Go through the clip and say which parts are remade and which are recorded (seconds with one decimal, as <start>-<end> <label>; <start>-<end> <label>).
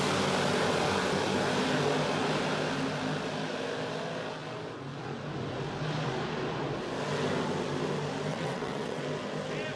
0.0-8.3 recorded; 8.3-9.0 remade; 9.0-9.8 recorded